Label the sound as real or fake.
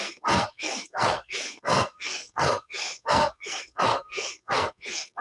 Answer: fake